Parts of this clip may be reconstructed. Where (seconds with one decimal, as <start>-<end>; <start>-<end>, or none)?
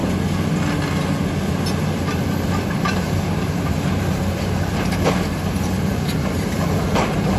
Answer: 2.7-7.4